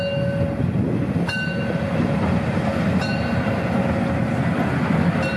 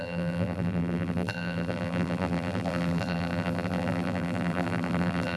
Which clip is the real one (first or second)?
first